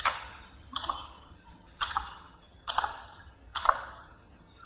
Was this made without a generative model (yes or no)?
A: no